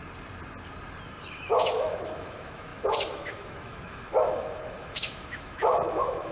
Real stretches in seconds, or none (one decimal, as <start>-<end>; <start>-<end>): 0.0-1.2